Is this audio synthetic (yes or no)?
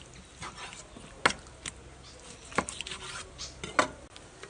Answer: no